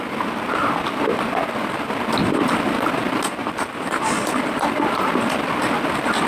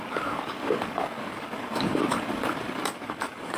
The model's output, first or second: second